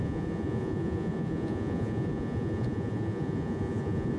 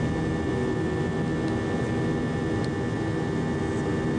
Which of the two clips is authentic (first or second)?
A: second